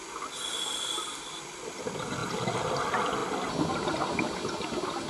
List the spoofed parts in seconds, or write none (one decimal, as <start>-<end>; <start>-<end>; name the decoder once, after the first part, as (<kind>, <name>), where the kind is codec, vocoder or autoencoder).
none